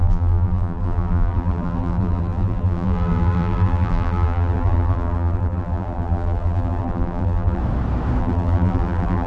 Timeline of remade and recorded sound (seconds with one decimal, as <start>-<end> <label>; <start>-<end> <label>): 0.0-7.6 remade; 7.6-8.2 recorded; 8.2-9.3 remade